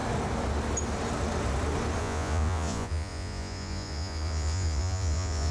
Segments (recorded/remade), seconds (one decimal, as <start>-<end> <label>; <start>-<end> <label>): 0.0-2.0 recorded; 2.0-5.5 remade

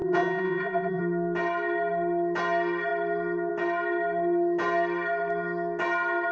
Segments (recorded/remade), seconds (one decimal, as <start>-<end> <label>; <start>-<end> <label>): 0.0-1.0 remade; 1.0-6.3 recorded

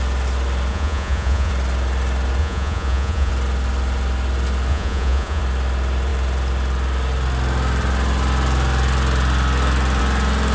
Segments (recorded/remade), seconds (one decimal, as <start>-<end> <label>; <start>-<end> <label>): 0.0-0.7 recorded; 0.7-1.5 remade; 1.5-2.4 recorded; 2.4-3.3 remade; 3.3-4.7 recorded; 4.7-5.4 remade; 5.4-10.5 recorded

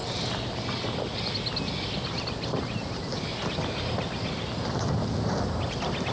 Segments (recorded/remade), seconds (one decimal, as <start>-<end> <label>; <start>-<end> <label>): 0.0-6.1 recorded

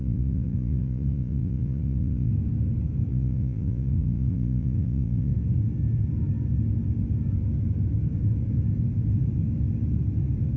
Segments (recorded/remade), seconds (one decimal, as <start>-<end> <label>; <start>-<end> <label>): 0.0-2.3 remade; 2.3-3.1 recorded; 3.1-5.3 remade; 5.3-10.6 recorded

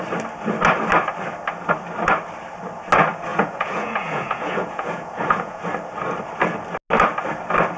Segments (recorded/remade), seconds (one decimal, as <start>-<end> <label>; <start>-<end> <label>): 0.0-3.3 recorded; 3.3-5.6 remade; 5.6-7.8 recorded

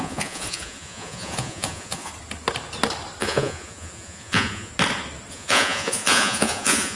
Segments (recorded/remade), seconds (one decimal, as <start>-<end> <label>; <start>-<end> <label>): 0.0-2.1 remade; 2.1-3.2 recorded; 3.2-4.7 remade; 4.7-5.3 recorded; 5.3-7.0 remade

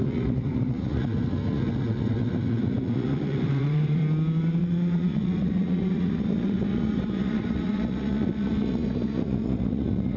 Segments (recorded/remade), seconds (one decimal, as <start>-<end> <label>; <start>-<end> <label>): 0.0-4.0 remade; 4.0-4.6 recorded; 4.6-10.2 remade